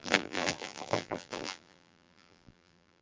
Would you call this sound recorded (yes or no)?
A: no